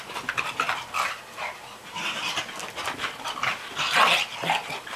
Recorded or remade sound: recorded